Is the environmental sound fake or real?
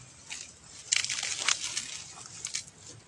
real